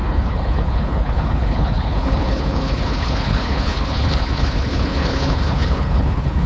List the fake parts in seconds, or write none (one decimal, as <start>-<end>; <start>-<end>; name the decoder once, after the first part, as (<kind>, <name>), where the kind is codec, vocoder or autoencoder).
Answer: 0.0-6.5 (codec, HILCodec)